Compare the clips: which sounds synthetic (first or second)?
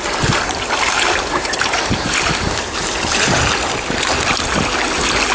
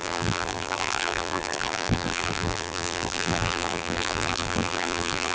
second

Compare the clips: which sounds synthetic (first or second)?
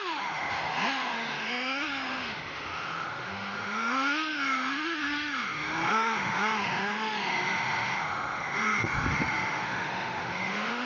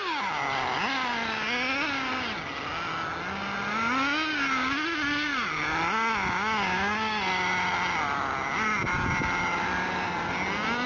first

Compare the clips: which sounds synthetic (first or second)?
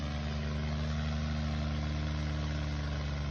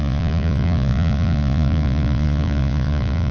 second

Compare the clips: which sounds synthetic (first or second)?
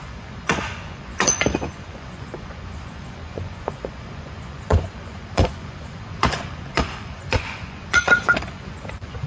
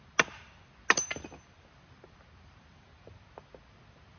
first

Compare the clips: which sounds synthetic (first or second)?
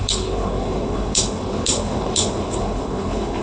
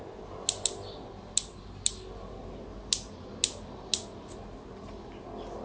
first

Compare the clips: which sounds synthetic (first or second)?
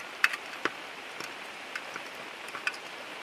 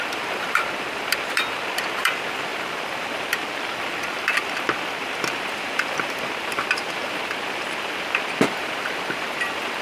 second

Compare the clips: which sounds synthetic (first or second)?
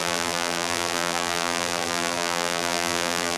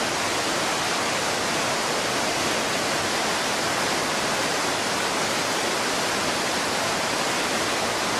first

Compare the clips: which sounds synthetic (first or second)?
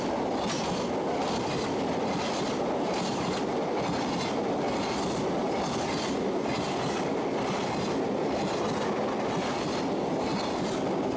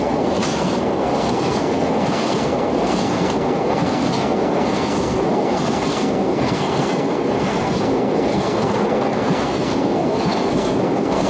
second